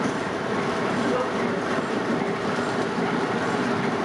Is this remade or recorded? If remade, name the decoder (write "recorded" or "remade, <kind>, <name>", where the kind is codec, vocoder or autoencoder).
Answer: remade, vocoder, BigVGAN v2